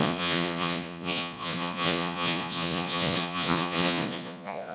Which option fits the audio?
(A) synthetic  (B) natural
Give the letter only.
A